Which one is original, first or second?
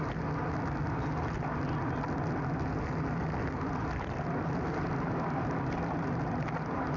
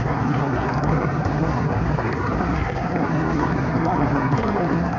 first